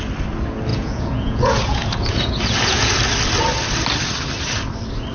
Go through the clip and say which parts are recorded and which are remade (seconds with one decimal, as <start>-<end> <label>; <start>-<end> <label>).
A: 0.0-0.7 recorded; 0.7-3.0 remade; 3.0-5.1 recorded

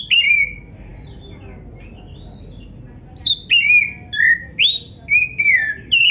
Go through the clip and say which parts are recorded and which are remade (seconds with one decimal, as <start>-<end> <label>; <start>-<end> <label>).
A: 0.0-6.1 recorded

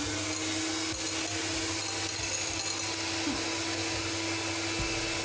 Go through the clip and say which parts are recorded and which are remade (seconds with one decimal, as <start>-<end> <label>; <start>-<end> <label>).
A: 0.0-5.2 recorded

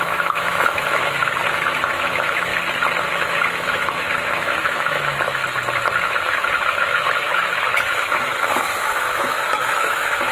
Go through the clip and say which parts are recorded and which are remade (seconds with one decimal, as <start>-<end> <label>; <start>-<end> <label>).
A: 0.0-2.5 remade; 2.5-3.1 recorded; 3.1-5.4 remade; 5.4-6.0 recorded; 6.0-10.3 remade

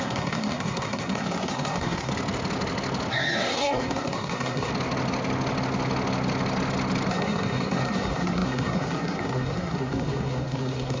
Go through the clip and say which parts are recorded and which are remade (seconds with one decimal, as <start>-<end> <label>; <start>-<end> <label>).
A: 0.0-2.1 remade; 2.1-3.1 recorded; 3.1-4.7 remade; 4.7-7.1 recorded; 7.1-11.0 remade